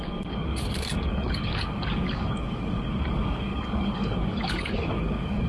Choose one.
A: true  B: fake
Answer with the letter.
B